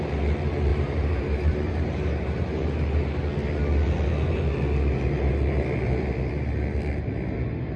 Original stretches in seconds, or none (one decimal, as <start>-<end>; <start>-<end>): 0.0-0.7; 3.2-7.8

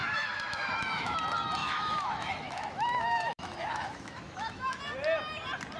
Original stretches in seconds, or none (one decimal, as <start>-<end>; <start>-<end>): 1.2-1.6; 4.8-5.8

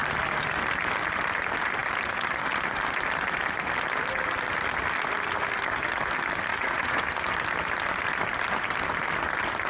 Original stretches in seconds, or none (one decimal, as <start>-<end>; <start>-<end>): 0.0-6.5; 7.0-9.7